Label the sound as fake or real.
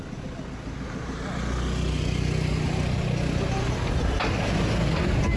real